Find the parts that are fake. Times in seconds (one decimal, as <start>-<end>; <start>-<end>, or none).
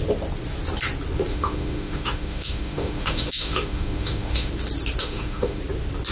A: 1.3-4.5; 5.0-5.6